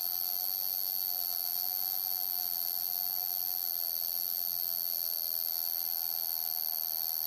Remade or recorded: recorded